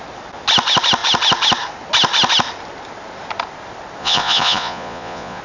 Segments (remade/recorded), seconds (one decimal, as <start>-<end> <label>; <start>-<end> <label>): 0.0-4.0 recorded; 4.0-5.4 remade